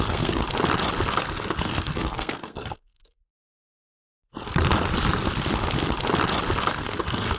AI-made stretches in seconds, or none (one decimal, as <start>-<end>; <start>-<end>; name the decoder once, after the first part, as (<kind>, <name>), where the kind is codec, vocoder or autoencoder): 0.0-0.4 (codec, SNAC); 1.6-3.8; 6.7-7.4